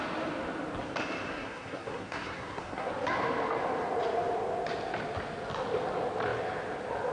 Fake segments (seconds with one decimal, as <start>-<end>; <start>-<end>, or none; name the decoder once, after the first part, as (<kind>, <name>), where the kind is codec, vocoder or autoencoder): 1.3-2.9 (codec, SNAC)